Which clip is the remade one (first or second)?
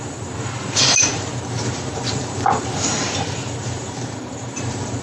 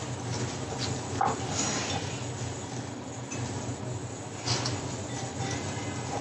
first